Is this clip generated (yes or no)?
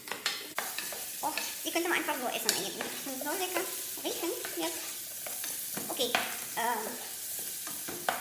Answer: no